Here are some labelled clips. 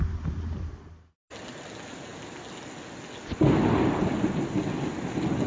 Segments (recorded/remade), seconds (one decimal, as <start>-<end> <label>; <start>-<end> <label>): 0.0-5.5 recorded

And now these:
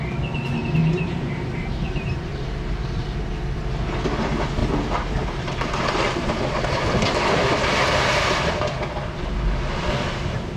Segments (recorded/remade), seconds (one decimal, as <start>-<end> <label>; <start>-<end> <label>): 0.0-0.8 recorded; 0.8-3.2 remade; 3.2-4.6 recorded; 4.6-6.5 remade; 6.5-10.6 recorded

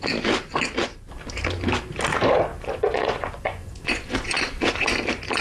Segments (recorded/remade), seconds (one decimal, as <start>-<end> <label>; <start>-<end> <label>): 0.0-2.5 recorded; 2.5-4.9 remade; 4.9-5.4 recorded

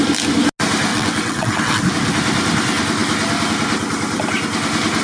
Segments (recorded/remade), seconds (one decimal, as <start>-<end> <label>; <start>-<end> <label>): 0.0-0.9 recorded; 0.9-1.8 remade; 1.8-5.0 recorded

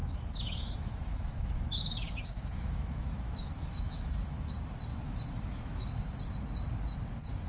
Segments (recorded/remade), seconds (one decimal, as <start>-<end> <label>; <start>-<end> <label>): 0.0-4.5 remade; 4.5-4.9 recorded; 4.9-6.1 remade; 6.1-7.5 recorded